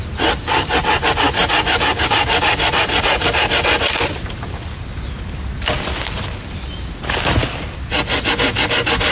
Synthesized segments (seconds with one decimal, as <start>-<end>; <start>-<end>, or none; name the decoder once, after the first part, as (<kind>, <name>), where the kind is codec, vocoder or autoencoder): none